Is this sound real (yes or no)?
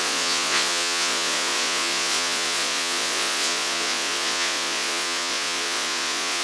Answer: no